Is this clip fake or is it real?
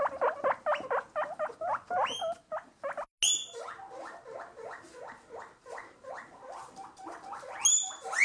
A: real